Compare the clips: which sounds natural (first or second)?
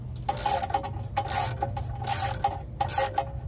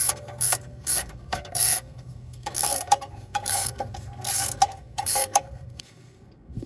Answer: first